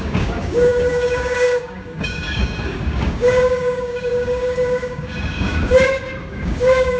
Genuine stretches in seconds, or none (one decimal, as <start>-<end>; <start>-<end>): 5.7-6.3